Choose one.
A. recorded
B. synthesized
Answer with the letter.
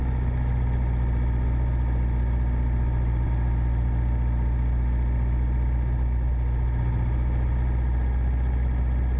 A